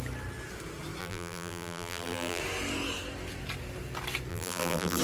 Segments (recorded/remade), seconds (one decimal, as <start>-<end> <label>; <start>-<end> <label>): 0.0-1.0 recorded; 1.0-2.4 remade; 2.4-4.3 recorded; 4.3-5.0 remade